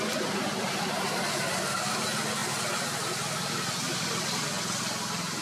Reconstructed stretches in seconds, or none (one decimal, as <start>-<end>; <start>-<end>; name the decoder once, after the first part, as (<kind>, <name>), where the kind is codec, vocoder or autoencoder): none